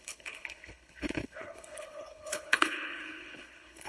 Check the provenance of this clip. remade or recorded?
remade